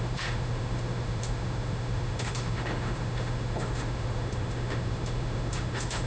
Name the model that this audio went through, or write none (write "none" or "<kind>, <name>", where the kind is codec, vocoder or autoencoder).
autoencoder, DAC-VAE